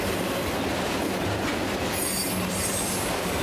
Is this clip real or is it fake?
fake